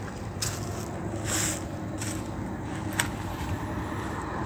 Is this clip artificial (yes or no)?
no